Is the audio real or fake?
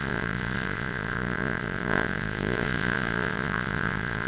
fake